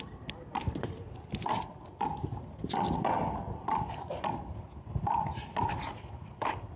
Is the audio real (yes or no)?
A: yes